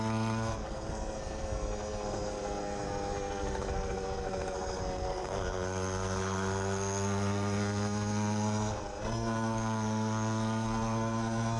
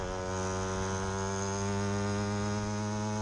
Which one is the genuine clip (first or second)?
second